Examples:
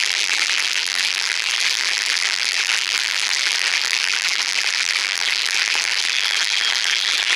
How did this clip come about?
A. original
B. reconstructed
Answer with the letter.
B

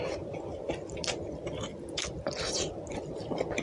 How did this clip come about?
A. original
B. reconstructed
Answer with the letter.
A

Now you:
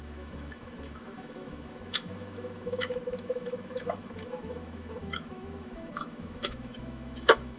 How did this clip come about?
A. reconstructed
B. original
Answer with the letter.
A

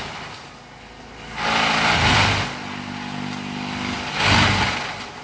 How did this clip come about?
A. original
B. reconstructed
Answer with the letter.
A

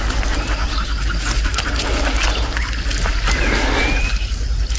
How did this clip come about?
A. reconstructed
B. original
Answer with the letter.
B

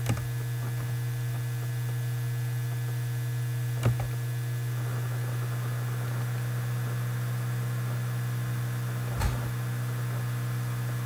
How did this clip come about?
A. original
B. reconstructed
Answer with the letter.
A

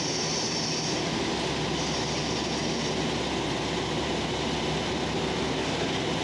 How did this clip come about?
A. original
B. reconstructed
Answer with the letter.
A